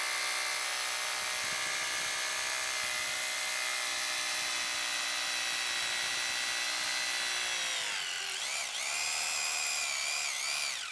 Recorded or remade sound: recorded